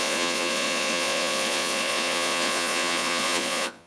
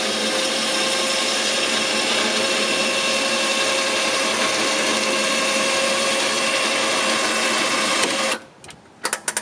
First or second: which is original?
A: second